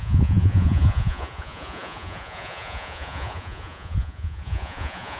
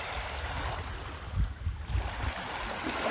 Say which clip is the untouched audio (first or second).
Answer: second